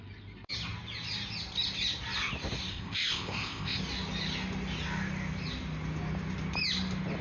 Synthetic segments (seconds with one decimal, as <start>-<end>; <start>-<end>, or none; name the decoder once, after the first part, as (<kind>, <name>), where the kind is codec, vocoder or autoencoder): 2.7-3.8 (codec, ZipCodec)